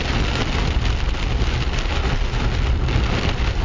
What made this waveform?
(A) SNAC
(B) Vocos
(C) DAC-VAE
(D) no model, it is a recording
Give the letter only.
D